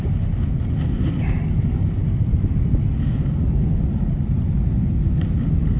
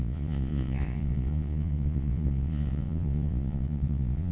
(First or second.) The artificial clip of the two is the second